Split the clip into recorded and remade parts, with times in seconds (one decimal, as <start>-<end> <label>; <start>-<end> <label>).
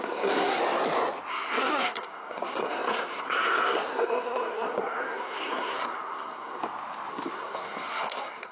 0.0-0.6 remade; 0.6-1.3 recorded; 1.3-6.6 remade; 6.6-7.1 recorded; 7.1-8.5 remade